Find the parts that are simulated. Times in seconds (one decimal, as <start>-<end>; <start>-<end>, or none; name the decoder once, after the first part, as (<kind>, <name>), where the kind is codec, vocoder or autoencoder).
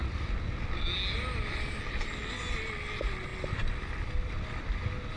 none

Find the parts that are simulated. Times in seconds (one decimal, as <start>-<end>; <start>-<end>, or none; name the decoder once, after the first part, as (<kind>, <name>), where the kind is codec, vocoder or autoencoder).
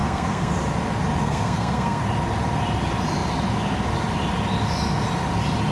0.0-0.5 (codec, SNAC); 1.2-2.0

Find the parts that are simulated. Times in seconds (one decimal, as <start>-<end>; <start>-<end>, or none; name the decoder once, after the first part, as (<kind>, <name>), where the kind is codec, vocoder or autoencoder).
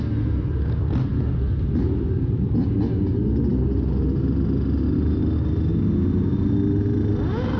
none